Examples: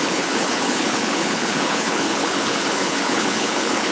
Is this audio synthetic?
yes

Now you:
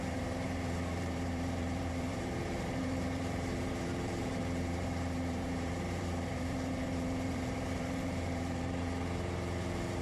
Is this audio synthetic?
yes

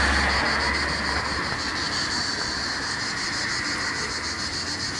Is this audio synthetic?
no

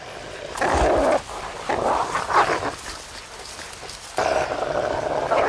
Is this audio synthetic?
no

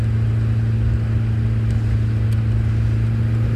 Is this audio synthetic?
no